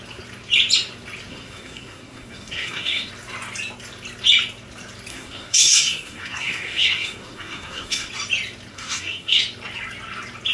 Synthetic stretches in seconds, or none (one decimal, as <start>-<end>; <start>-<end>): 1.3-3.1; 5.1-8.1; 8.7-9.4